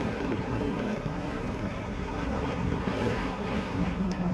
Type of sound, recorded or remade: remade